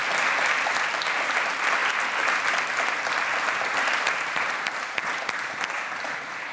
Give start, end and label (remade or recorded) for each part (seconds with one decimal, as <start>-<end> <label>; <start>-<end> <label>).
0.0-6.5 recorded